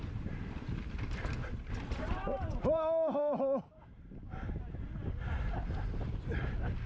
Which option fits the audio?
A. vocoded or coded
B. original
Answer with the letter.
A